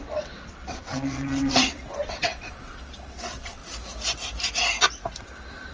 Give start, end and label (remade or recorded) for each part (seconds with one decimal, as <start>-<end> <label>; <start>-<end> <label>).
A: 0.0-3.6 remade; 3.6-5.2 recorded; 5.2-5.7 remade